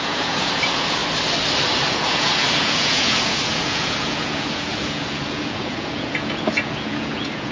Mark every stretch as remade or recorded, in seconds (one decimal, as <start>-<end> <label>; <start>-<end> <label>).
0.0-1.0 remade; 1.0-1.9 recorded; 1.9-7.5 remade